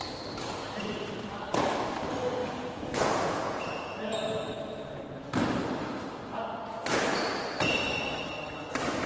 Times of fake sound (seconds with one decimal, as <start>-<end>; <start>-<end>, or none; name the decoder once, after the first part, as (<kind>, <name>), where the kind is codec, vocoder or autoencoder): 2.4-5.0 (vocoder, Vocos)